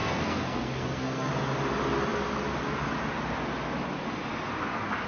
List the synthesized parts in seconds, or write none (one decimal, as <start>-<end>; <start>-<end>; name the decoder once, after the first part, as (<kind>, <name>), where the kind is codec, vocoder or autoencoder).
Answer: 0.0-1.3 (codec, SNAC)